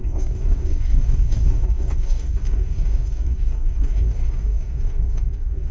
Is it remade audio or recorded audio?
remade